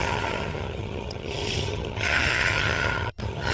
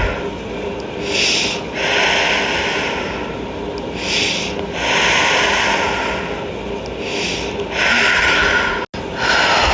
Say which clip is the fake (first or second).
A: first